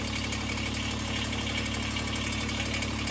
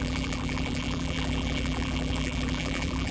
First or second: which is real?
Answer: first